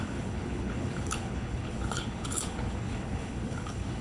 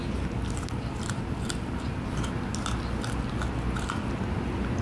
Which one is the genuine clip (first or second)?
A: second